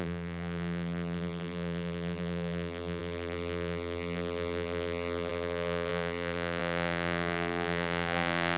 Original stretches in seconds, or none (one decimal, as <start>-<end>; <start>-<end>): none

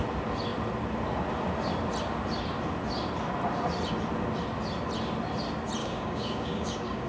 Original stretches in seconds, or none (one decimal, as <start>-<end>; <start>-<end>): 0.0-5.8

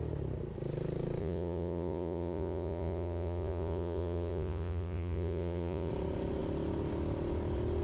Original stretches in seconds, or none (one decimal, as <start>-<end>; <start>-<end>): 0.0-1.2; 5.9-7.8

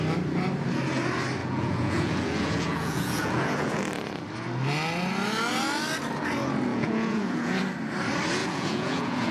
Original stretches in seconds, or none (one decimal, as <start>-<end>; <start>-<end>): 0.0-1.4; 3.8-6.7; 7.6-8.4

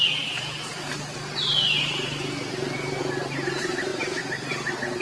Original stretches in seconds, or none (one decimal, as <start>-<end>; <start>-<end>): 0.0-1.5; 3.1-5.0

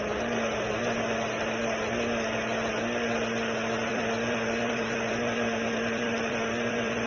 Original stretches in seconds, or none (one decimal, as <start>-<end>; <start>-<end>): 0.0-3.8